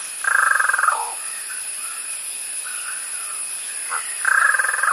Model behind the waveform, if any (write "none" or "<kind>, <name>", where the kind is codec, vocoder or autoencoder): none